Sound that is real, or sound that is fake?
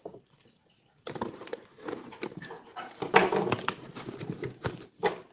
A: fake